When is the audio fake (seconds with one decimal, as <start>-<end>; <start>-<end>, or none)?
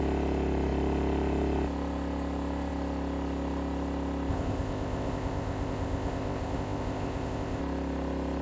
4.3-7.6